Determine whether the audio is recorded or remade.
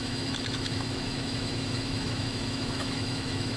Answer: remade